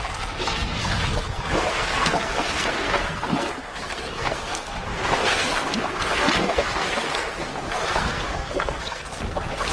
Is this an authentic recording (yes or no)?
no